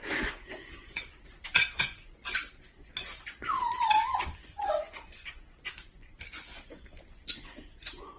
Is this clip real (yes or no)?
no